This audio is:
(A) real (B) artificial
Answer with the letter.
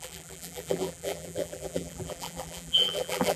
B